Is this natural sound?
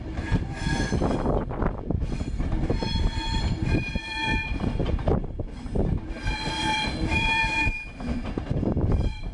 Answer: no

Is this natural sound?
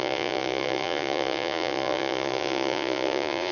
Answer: no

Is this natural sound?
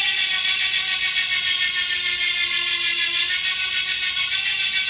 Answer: yes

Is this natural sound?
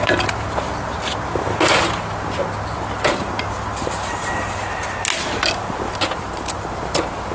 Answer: yes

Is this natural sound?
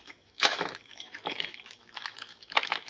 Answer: no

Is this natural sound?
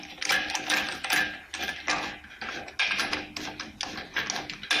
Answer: yes